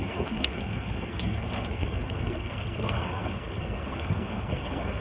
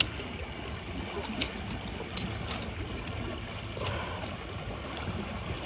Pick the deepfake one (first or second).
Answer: first